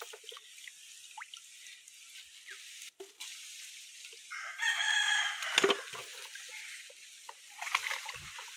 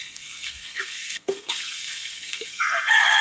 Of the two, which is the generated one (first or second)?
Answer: second